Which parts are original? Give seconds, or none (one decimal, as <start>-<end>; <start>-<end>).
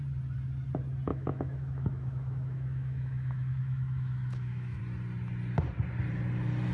0.0-1.1; 4.8-6.7